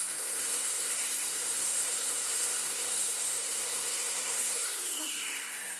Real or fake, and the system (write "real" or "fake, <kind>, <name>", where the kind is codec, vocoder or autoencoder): fake, codec, SNAC